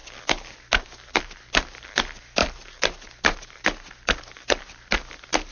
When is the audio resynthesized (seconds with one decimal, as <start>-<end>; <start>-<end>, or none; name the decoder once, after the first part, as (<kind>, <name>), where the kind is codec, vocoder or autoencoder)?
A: none